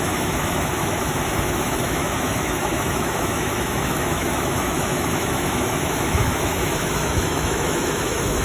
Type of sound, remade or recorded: remade